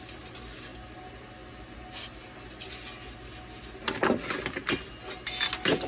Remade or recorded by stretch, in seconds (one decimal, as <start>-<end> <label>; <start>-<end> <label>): 0.0-5.9 recorded